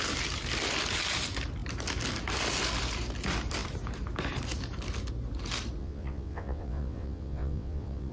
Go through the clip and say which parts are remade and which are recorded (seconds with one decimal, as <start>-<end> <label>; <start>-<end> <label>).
0.0-5.8 recorded; 5.8-8.1 remade